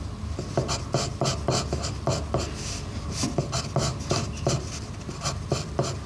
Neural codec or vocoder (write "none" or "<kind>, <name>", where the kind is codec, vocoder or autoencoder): none